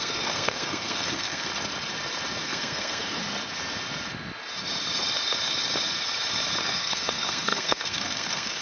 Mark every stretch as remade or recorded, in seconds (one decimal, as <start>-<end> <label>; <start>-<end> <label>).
0.0-1.5 remade; 1.5-2.4 recorded; 2.4-3.2 remade; 3.2-6.6 recorded; 6.6-8.6 remade